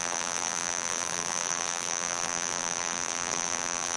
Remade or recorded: remade